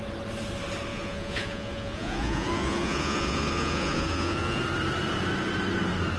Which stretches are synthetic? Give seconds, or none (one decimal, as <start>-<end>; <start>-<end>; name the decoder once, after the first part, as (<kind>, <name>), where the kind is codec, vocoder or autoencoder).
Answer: 0.9-4.6 (vocoder, Vocos)